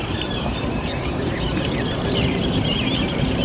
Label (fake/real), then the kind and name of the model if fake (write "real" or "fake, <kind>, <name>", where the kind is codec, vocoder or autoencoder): fake, vocoder, BigVGAN v2